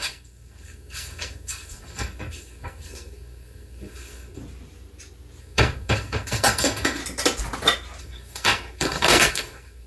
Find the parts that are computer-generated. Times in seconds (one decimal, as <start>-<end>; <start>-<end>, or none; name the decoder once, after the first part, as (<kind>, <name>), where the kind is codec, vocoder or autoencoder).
0.0-4.4 (codec, SNAC); 5.4-7.0; 8.0-9.9